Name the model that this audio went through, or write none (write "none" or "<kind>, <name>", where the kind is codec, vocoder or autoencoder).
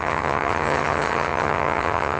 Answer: vocoder, HiFi-GAN